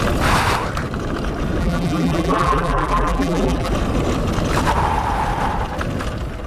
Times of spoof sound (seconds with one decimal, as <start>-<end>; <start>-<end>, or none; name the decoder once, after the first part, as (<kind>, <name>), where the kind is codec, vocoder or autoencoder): 1.6-3.7 (vocoder, BigVGAN v2)